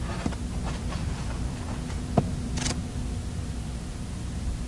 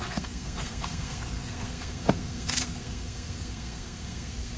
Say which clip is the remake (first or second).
second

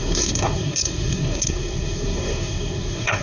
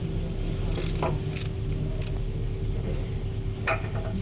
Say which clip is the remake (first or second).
first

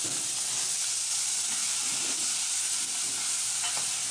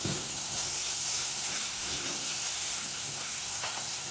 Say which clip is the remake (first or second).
second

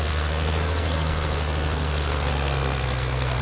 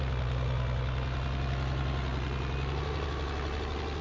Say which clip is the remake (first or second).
first